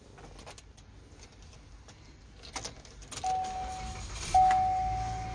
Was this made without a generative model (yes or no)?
yes